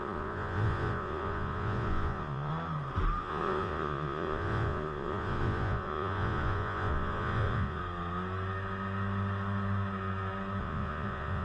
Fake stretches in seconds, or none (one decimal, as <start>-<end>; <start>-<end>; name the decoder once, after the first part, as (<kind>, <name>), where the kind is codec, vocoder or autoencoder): 0.0-2.5 (vocoder, Vocos); 3.2-7.8; 10.6-11.4